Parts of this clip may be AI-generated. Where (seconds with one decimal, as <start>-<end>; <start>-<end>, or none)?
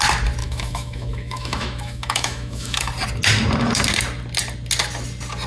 0.4-2.9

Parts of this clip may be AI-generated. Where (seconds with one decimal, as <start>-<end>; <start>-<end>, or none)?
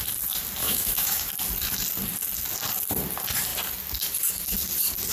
0.6-1.3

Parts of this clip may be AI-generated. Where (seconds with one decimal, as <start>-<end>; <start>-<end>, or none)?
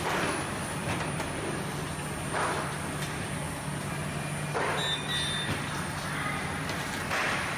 none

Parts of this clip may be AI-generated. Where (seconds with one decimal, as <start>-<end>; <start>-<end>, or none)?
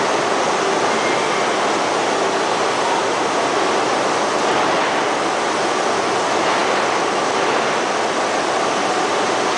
none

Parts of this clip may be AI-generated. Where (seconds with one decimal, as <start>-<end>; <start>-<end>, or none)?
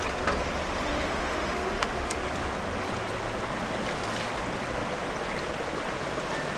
0.9-2.2